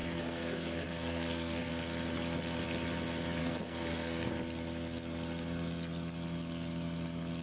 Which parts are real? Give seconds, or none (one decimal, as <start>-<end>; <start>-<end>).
1.7-3.4; 4.3-7.4